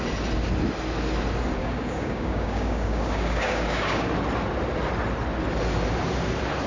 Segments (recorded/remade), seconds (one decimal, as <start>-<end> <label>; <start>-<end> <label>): 0.0-1.6 recorded; 1.6-4.1 remade; 4.1-6.7 recorded

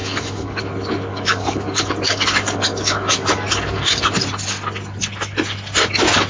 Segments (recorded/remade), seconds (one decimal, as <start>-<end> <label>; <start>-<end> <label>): 0.0-0.6 remade; 0.6-1.1 recorded; 1.1-4.0 remade; 4.0-6.3 recorded

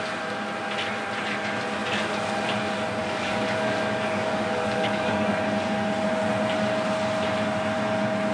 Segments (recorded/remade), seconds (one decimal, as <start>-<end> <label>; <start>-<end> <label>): 0.0-3.0 recorded; 3.0-5.3 remade; 5.3-8.3 recorded

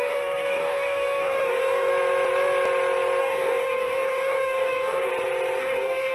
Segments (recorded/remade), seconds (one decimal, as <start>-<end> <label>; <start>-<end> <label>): 0.0-1.9 remade; 1.9-3.2 recorded; 3.2-5.1 remade; 5.1-5.6 recorded; 5.6-6.1 remade

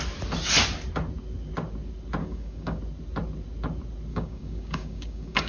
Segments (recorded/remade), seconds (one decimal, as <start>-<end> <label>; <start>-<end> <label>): 0.0-2.2 recorded; 2.2-2.8 remade; 2.8-4.1 recorded; 4.1-5.5 remade

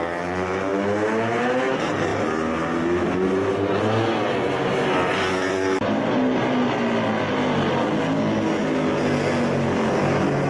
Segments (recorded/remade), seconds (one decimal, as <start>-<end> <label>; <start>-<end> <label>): 0.0-10.5 recorded